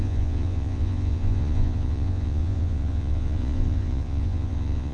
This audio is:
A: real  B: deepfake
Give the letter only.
B